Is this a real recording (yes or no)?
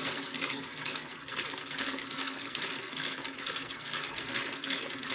no